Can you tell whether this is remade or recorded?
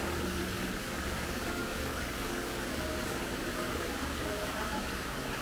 remade